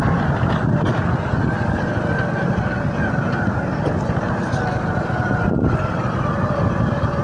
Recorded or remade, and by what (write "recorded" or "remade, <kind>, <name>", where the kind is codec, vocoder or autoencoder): recorded